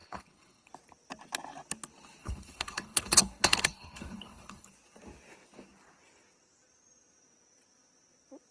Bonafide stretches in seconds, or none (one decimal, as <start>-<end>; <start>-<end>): 0.7-2.2; 4.7-8.5